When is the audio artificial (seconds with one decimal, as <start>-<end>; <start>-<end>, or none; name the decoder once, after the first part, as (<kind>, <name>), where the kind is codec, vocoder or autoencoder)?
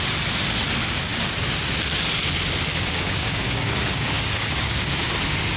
2.7-5.1 (codec, DAC)